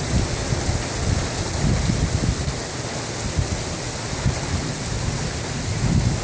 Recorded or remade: recorded